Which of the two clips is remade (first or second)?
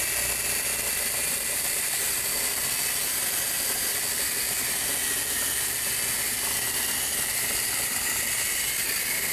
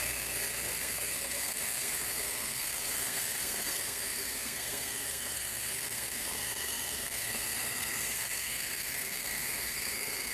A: second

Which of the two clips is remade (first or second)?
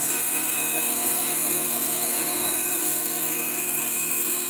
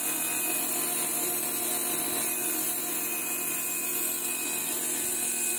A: first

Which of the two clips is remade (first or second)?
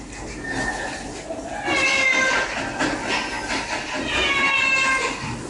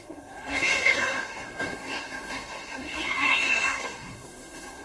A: second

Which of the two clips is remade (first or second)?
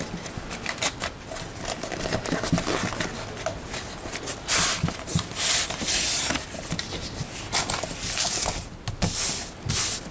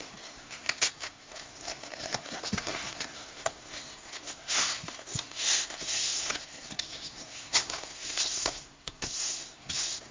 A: second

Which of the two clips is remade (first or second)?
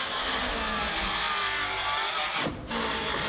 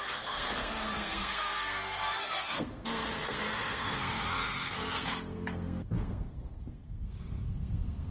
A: second